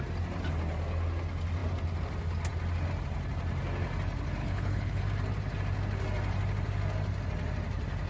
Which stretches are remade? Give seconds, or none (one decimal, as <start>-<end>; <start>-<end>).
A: 4.4-5.0